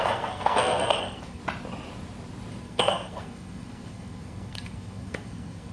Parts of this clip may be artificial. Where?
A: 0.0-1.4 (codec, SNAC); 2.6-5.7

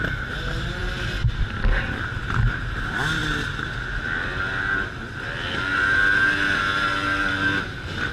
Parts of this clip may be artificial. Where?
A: none

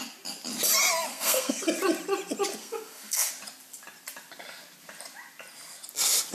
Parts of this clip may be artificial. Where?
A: 1.1-1.6 (codec, SNAC); 2.6-3.3

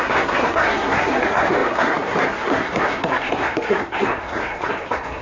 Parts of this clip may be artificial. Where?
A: 0.0-5.2 (codec, SNAC)

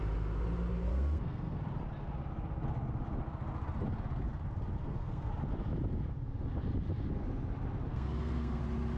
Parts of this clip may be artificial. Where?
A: 0.9-1.6 (codec, SNAC); 4.8-5.3; 7.9-8.6

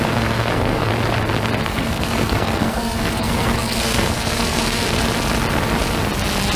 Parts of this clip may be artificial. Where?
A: 0.0-0.9 (codec, SNAC); 1.7-5.0